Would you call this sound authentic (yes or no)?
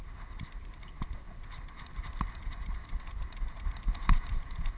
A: yes